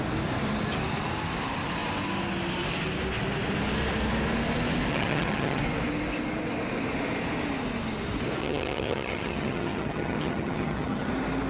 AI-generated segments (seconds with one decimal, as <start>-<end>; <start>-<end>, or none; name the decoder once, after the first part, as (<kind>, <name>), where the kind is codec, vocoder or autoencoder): 4.9-5.6 (vocoder, HiFi-GAN); 8.4-11.1